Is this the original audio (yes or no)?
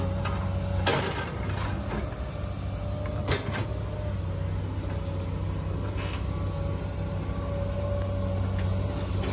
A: yes